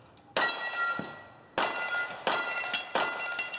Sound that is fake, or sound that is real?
real